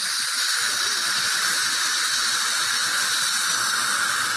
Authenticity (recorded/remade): recorded